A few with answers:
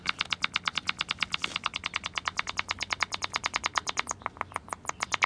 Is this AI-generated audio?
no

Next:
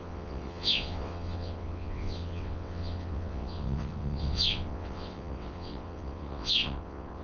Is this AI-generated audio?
yes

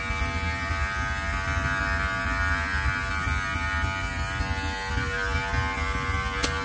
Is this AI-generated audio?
no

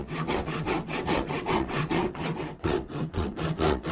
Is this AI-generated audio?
yes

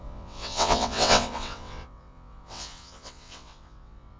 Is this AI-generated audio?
yes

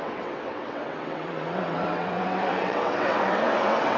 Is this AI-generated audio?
yes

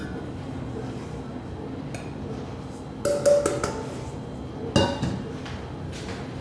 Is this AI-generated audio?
no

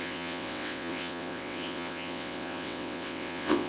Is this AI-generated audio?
yes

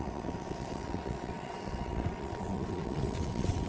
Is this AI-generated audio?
yes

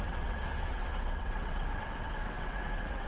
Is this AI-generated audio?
yes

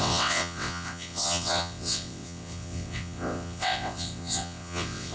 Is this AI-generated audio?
yes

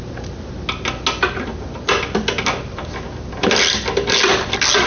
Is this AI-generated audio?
no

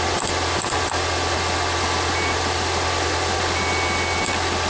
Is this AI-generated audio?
no